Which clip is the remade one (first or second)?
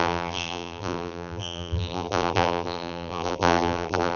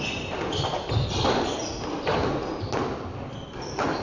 first